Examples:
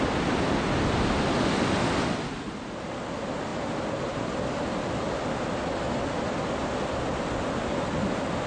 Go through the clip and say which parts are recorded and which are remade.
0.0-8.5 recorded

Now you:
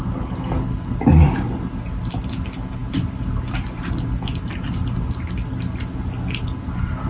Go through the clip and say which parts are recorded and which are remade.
0.0-7.1 recorded

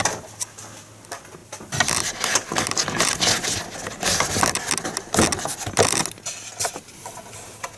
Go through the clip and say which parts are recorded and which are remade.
0.0-7.8 recorded

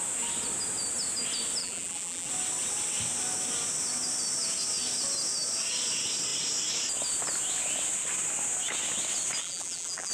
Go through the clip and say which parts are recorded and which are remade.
0.0-1.6 recorded; 1.6-2.3 remade; 2.3-9.4 recorded; 9.4-10.1 remade